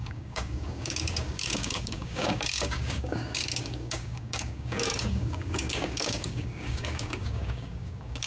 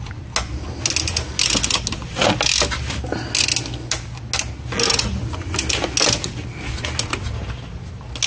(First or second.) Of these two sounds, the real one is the second